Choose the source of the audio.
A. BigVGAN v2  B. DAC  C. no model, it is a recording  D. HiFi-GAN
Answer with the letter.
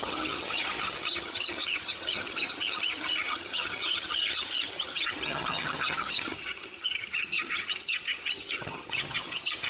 D